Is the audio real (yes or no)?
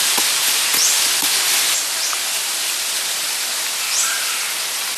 yes